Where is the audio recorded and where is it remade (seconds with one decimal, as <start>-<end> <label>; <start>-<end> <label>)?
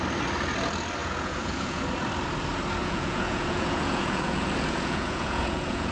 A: 0.0-1.0 recorded; 1.0-1.8 remade; 1.8-2.8 recorded; 2.8-5.9 remade